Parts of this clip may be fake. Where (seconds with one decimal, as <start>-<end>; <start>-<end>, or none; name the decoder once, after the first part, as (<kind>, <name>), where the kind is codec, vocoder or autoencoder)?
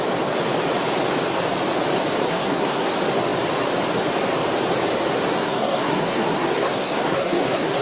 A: 2.2-2.9 (codec, SNAC); 5.4-7.8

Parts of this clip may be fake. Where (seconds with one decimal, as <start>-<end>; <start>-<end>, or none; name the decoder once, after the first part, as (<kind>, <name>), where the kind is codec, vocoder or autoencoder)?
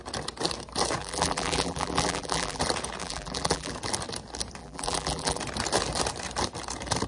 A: 1.0-2.6 (vocoder, BigVGAN v2); 3.0-3.7; 4.6-5.4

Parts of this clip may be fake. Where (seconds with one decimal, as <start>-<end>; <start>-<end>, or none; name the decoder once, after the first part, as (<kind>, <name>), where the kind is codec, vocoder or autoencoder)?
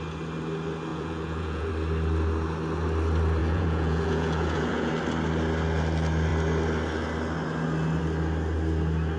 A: 0.9-1.7 (vocoder, Vocos); 3.4-4.9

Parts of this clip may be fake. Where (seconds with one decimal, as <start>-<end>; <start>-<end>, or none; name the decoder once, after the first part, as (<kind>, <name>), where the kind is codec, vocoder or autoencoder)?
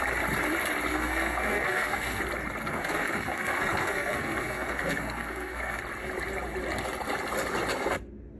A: 0.9-2.2 (codec, SNAC); 2.6-5.8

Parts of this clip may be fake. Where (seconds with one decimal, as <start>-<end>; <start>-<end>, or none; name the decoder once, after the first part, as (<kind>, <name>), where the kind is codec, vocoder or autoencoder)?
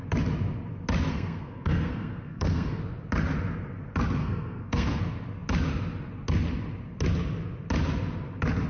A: 1.1-2.8 (codec, SNAC); 4.2-5.0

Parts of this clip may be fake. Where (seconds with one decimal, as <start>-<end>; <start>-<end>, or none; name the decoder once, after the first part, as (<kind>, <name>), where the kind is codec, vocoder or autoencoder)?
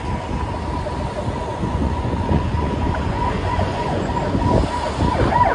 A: 1.5-4.1 (vocoder, Vocos)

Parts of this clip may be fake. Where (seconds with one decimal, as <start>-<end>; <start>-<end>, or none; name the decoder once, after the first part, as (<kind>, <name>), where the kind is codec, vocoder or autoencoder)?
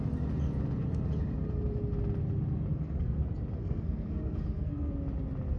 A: 2.7-3.2 (codec, SNAC); 3.6-4.9